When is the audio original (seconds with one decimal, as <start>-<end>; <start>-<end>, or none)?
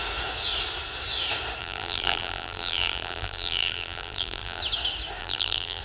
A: 0.0-1.6; 4.6-5.2